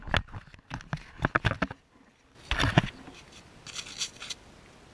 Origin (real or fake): real